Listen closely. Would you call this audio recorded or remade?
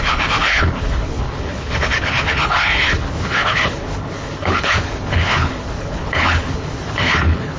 remade